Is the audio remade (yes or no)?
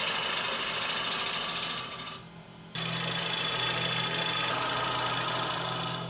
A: no